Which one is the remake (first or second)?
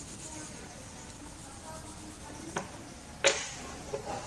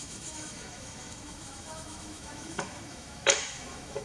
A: second